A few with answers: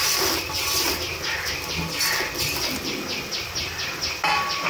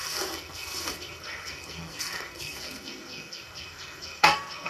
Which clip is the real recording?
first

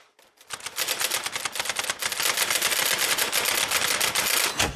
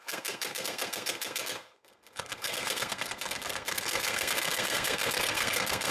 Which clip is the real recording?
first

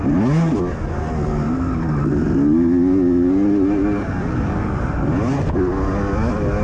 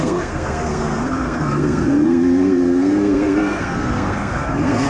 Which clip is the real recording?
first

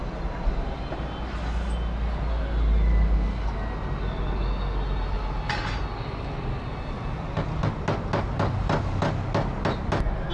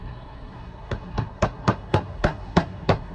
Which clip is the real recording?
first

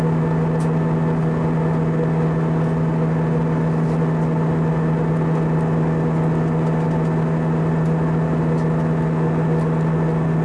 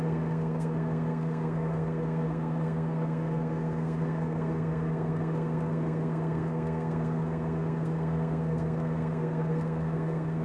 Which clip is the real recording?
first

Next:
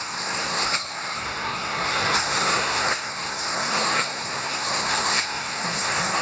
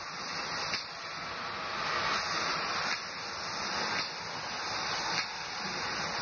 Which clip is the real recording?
second